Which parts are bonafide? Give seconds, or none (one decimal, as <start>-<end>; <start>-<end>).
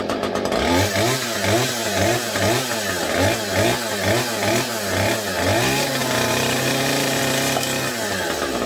0.0-1.8; 2.4-6.0; 7.2-8.7